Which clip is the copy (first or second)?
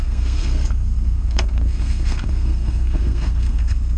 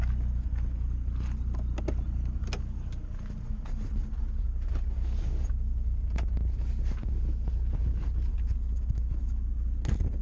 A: first